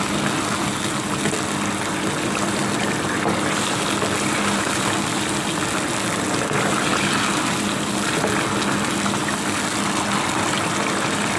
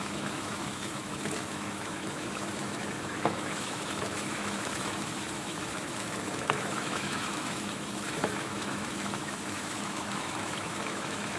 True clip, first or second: first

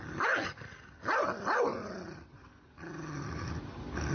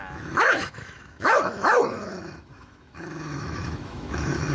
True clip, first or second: first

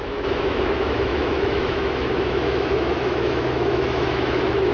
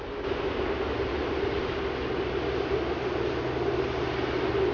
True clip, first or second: second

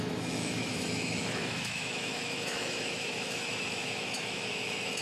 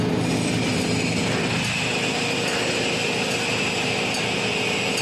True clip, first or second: second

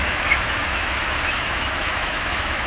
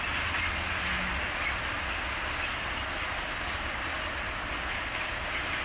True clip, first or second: second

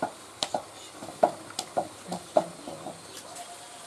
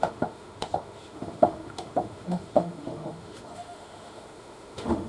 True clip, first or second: first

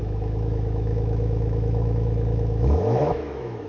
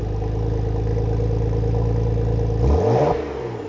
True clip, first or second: second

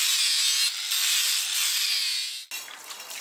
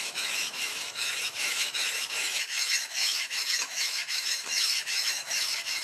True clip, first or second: first